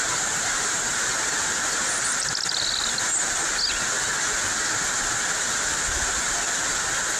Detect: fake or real real